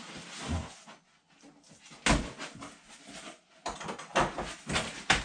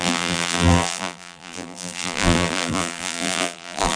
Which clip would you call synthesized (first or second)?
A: second